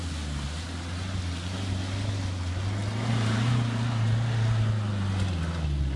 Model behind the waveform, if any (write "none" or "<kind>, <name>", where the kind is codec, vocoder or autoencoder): none